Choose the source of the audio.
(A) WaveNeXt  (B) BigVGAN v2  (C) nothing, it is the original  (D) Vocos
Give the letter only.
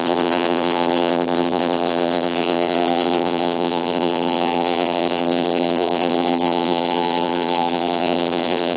B